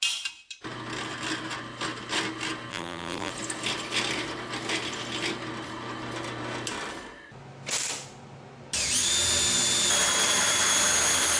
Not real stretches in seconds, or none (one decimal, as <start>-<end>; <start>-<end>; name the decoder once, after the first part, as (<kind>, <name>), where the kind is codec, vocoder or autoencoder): 2.7-3.3 (vocoder, BigVGAN v2)